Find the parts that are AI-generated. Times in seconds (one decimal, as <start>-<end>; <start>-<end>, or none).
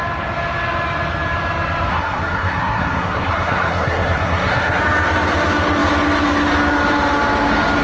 1.9-4.8